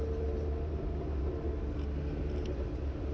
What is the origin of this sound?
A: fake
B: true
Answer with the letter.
B